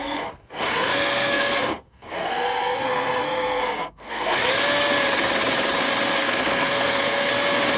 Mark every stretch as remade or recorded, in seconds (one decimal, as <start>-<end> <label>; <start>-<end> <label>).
0.0-4.4 remade; 4.4-6.2 recorded; 6.2-7.3 remade; 7.3-7.8 recorded